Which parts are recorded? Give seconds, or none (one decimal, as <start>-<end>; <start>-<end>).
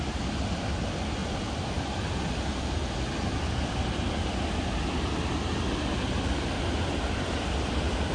0.0-8.1